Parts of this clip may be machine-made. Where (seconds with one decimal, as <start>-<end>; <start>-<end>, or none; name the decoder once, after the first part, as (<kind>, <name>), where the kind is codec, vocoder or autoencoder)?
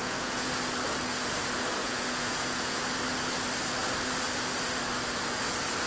0.0-0.5 (vocoder, Vocos); 1.8-2.8